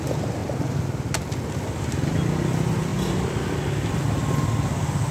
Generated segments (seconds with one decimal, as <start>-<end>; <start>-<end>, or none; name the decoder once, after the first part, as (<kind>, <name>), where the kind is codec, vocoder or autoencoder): none